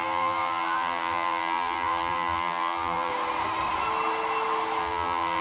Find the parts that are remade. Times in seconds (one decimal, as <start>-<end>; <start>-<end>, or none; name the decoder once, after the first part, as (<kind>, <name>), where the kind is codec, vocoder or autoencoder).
0.0-3.1 (vocoder, BigVGAN v2); 4.8-5.4